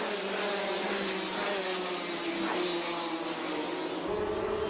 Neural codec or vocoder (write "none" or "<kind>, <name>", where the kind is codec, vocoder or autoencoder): none